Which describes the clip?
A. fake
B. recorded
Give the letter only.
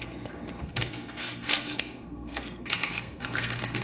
A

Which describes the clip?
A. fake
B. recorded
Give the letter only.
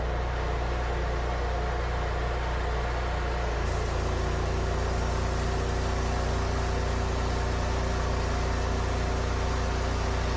B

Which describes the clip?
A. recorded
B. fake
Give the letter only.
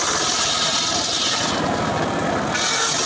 A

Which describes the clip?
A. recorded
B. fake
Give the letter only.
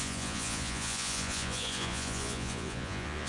B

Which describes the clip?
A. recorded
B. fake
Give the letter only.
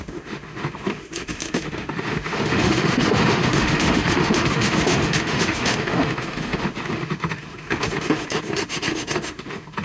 B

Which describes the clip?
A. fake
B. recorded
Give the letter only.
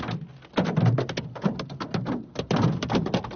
B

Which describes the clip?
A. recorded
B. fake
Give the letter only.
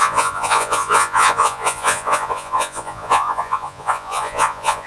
B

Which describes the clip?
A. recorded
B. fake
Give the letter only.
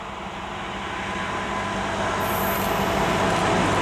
A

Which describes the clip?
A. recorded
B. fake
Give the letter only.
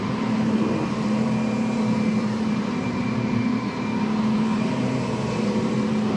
B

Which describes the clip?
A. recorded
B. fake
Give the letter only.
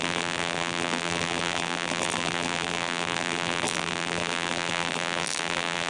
B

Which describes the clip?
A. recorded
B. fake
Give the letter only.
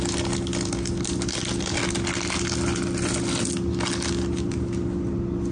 A